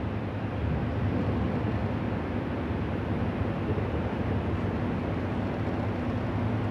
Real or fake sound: real